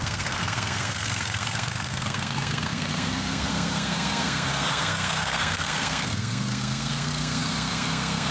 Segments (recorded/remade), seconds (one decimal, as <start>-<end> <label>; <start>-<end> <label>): 0.0-8.3 remade